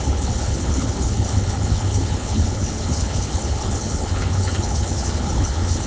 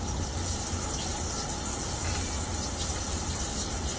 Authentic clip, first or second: second